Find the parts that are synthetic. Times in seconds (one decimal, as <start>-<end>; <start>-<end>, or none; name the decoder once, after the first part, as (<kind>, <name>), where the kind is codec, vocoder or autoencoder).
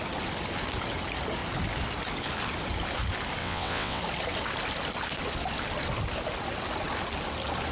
3.4-4.0 (vocoder, WaveNeXt)